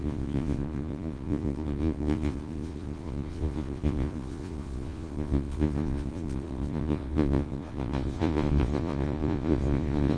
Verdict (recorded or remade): remade